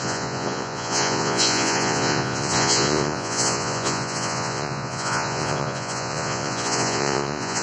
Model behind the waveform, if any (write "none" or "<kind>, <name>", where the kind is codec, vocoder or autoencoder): vocoder, Vocos